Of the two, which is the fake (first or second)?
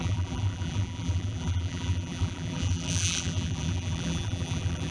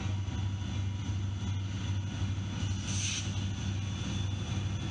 first